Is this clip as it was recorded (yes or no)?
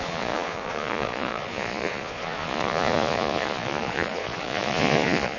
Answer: no